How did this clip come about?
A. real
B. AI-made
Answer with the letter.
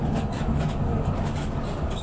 B